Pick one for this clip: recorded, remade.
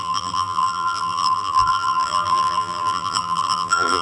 remade